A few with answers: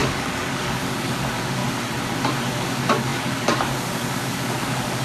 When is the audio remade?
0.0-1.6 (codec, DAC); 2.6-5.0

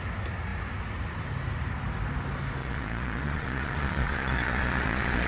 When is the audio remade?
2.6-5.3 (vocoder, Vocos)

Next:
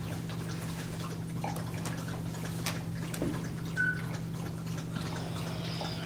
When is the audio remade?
none

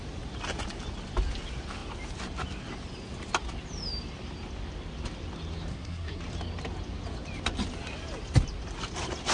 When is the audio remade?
5.7-6.2 (codec, SNAC)

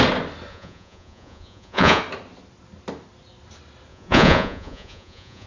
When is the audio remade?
0.5-2.0 (vocoder, Vocos); 3.9-5.5

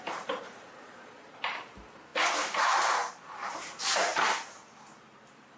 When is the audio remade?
0.0-2.1 (vocoder, BigVGAN v2); 3.1-4.1; 5.0-5.6

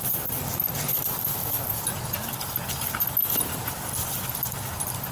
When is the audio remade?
none